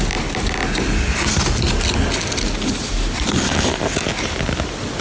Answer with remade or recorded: recorded